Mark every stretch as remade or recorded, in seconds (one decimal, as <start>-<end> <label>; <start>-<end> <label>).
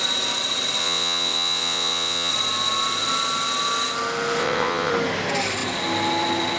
0.0-0.8 recorded; 0.8-2.3 remade; 2.3-4.4 recorded; 4.4-4.9 remade; 4.9-6.6 recorded